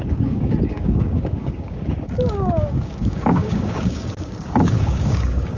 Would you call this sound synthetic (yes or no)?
yes